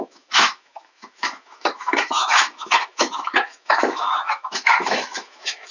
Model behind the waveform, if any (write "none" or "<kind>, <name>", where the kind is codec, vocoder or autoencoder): autoencoder, DAC-VAE